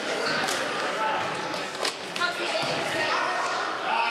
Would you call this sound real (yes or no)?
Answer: no